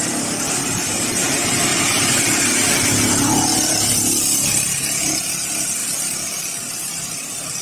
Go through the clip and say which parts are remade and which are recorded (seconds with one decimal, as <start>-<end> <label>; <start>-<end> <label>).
0.0-1.7 remade; 1.7-5.3 recorded; 5.3-5.8 remade; 5.8-6.7 recorded; 6.7-7.6 remade